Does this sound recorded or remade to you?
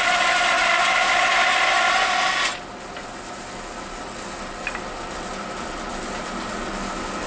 recorded